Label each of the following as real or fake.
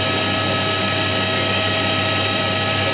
real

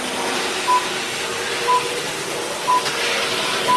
real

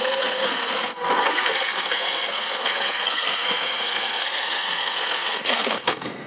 fake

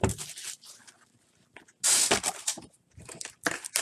real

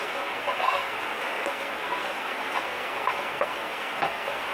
fake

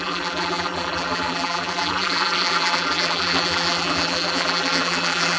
fake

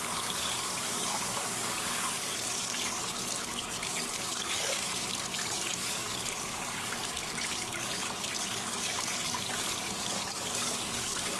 fake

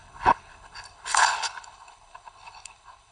fake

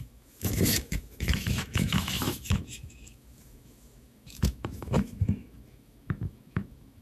fake